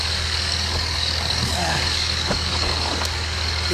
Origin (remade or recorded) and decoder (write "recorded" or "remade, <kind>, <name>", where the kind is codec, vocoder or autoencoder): remade, codec, DAC